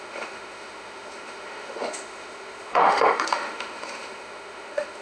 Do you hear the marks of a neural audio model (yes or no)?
yes